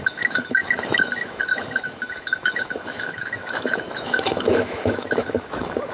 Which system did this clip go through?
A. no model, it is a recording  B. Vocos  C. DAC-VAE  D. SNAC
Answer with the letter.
C